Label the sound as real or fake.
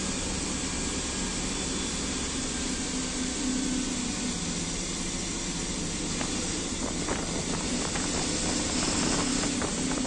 real